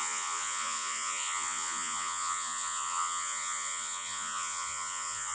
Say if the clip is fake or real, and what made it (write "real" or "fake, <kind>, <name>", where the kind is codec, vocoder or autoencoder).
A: fake, vocoder, Vocos